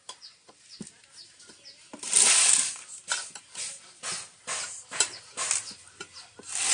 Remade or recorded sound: recorded